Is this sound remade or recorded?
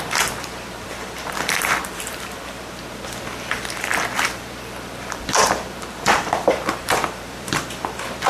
remade